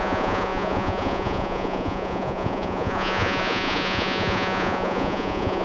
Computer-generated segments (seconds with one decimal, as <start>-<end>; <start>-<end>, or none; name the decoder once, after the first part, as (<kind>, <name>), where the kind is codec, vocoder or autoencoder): 0.0-5.6 (vocoder, Vocos)